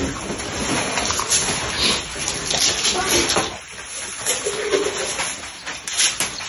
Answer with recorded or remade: recorded